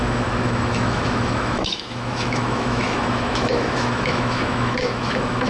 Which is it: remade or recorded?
remade